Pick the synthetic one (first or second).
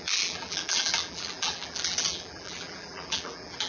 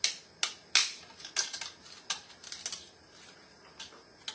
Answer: first